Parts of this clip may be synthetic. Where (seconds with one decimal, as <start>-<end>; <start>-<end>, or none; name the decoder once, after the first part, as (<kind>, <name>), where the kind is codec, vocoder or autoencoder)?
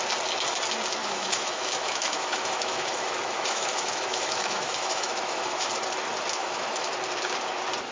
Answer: 1.0-5.7 (autoencoder, DAC-VAE); 6.4-6.9